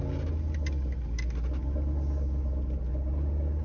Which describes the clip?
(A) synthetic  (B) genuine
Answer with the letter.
B